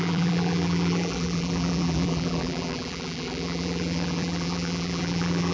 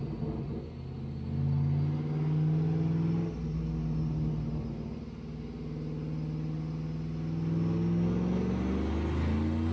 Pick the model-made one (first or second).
first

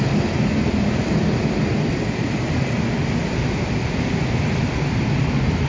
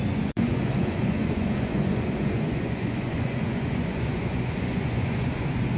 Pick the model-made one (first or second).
second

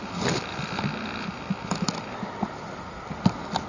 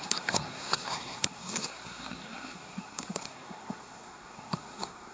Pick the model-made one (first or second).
second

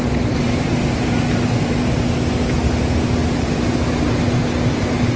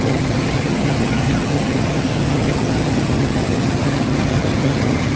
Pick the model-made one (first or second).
second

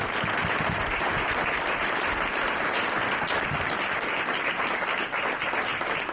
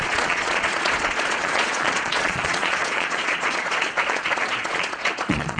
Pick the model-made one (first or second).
second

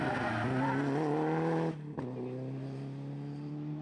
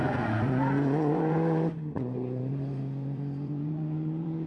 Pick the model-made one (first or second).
second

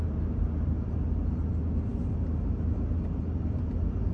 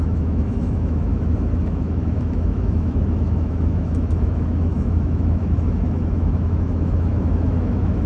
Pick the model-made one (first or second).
second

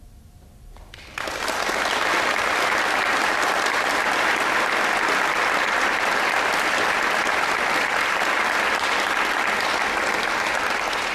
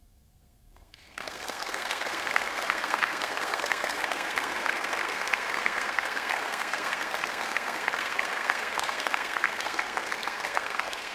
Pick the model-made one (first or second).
second